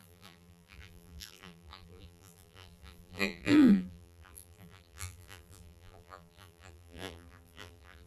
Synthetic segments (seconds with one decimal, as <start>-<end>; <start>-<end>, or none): 0.0-8.1